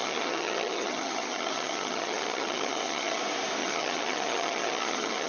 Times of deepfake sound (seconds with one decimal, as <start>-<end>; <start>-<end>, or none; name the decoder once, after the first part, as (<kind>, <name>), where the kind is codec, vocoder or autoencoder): 0.0-3.2 (vocoder, HiFi-GAN); 3.6-5.3